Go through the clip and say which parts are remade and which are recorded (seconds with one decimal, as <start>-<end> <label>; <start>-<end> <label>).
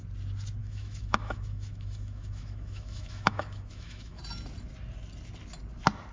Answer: 0.0-0.6 recorded; 0.6-4.2 remade; 4.2-6.1 recorded